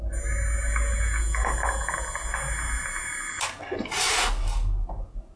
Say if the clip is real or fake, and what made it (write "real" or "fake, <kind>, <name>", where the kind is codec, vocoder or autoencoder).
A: real